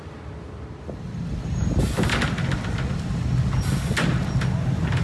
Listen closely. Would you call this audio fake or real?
real